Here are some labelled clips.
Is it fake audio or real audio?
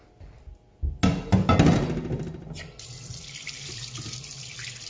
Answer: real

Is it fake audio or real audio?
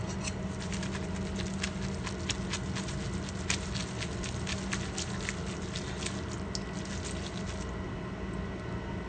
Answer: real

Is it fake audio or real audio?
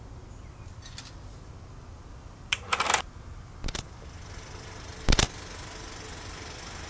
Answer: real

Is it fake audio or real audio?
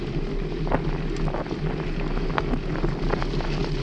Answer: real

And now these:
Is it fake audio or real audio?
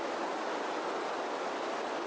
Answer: real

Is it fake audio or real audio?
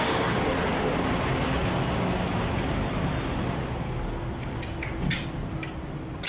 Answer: real